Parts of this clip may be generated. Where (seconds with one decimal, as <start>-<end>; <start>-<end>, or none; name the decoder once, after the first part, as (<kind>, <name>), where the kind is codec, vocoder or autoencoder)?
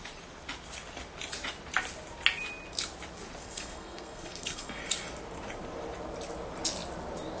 3.4-4.8 (codec, SNAC)